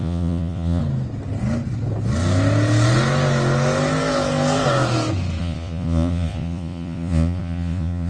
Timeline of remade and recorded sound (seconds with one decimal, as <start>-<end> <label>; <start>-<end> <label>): 0.0-0.8 remade; 0.8-5.4 recorded; 5.4-8.1 remade